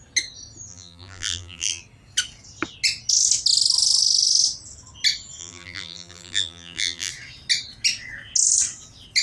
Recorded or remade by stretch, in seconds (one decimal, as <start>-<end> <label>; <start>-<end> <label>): 0.0-0.7 recorded; 0.7-1.8 remade; 1.8-5.4 recorded; 5.4-7.1 remade; 7.1-9.2 recorded